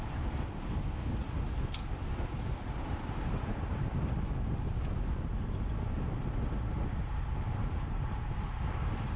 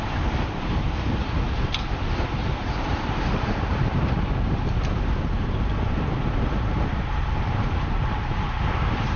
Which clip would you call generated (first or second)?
second